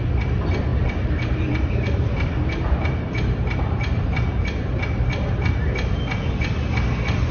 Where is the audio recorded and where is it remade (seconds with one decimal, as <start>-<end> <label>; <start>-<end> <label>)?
0.0-0.7 recorded; 0.7-5.1 remade; 5.1-7.3 recorded